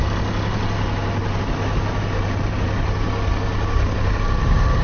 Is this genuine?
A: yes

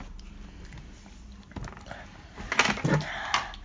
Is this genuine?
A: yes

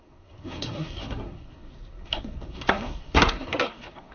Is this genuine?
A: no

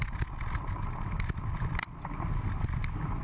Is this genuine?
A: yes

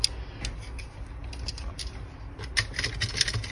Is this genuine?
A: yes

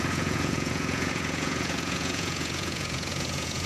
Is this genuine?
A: no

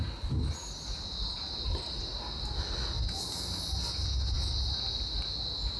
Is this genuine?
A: yes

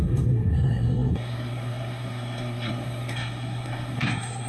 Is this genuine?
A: no